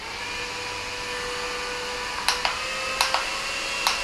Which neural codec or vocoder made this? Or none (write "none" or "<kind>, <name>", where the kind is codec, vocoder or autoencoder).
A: none